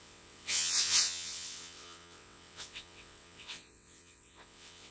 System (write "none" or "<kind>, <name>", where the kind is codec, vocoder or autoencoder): vocoder, WaveNeXt